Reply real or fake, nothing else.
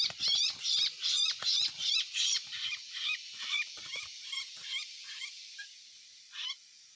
fake